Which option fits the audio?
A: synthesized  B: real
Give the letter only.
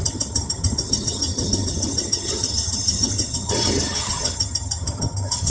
A